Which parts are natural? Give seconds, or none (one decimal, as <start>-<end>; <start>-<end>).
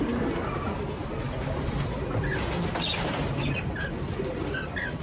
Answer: 0.0-5.0